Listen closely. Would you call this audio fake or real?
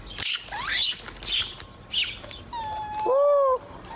real